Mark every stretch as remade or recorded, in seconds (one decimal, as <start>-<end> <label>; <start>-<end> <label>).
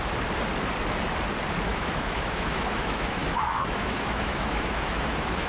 0.0-1.7 recorded; 1.7-5.5 remade